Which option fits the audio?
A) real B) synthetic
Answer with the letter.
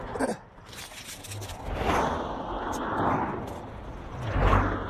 A